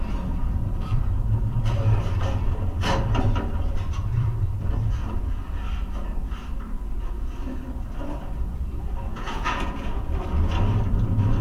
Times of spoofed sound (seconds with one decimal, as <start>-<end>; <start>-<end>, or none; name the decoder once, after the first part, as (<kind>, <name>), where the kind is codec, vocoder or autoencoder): 9.1-10.1 (vocoder, Vocos)